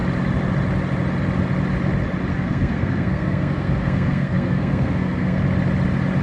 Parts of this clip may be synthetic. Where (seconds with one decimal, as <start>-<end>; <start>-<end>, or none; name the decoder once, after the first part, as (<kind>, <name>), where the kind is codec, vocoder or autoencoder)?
2.3-5.4 (codec, SNAC)